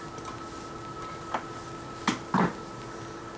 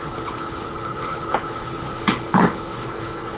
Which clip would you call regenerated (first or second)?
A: second